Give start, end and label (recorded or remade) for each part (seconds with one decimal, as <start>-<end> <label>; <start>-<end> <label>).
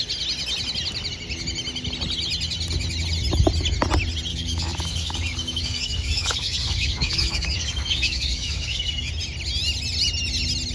0.0-4.3 recorded; 4.3-9.1 remade; 9.1-10.7 recorded